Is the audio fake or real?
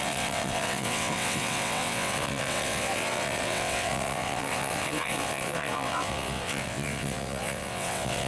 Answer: fake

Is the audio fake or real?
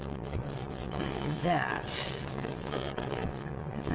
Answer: fake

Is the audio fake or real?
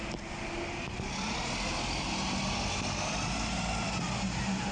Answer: real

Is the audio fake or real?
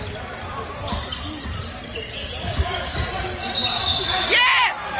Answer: real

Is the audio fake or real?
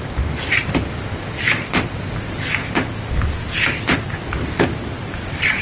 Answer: real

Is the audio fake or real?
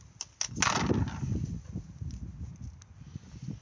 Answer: real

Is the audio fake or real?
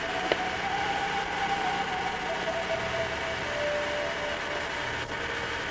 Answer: real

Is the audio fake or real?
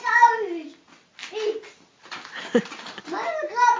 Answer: real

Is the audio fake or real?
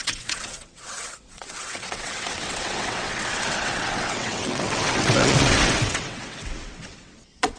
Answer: fake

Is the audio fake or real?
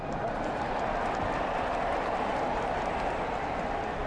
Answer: real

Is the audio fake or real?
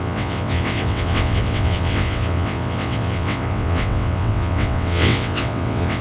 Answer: fake